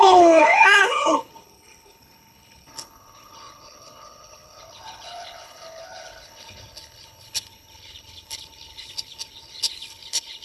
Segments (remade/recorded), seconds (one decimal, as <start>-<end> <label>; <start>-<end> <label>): 0.0-10.4 remade